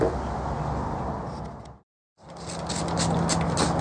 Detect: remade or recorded recorded